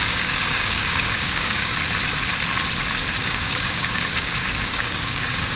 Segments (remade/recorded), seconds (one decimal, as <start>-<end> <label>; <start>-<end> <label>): 0.0-1.7 remade; 1.7-3.2 recorded; 3.2-5.6 remade